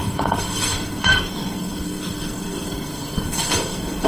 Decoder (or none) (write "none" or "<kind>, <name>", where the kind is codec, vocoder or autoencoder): codec, SNAC